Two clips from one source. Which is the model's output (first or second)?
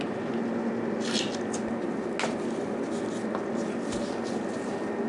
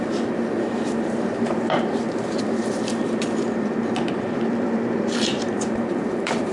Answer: second